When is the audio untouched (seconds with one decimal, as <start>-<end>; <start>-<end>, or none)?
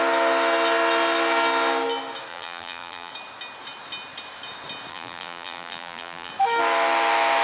0.0-2.3; 3.1-4.9; 6.3-7.4